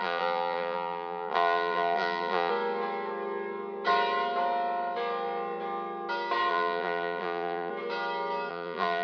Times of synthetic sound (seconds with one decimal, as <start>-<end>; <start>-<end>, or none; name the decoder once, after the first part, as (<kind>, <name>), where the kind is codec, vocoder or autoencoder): 0.0-2.5 (vocoder, BigVGAN v2); 6.5-7.7; 8.5-9.0